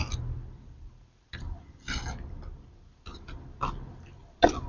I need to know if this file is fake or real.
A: real